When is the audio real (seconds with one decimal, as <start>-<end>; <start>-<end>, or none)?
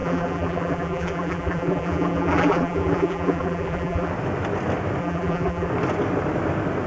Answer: 4.1-5.0; 5.7-6.9